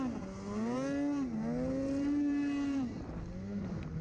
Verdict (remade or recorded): recorded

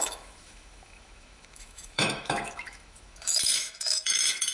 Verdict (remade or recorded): remade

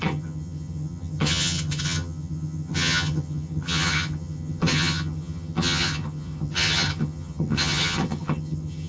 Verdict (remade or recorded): remade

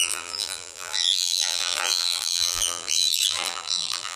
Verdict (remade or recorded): remade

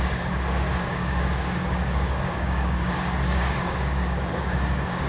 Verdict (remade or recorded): remade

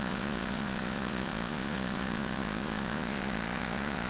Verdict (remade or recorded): remade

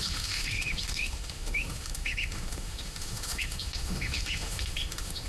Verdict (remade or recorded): remade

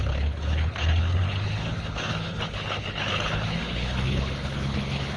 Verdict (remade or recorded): remade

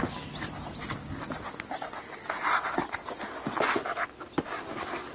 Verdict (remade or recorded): recorded